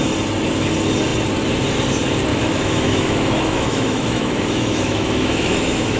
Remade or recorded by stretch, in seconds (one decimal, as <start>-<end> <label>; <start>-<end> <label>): 0.0-2.3 recorded; 2.3-6.0 remade